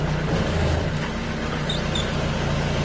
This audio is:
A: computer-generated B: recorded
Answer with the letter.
B